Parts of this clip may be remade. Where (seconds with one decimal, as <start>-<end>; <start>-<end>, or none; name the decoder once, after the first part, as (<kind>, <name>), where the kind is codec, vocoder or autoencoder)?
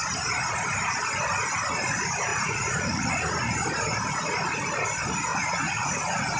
2.3-3.1 (vocoder, Vocos); 5.3-6.4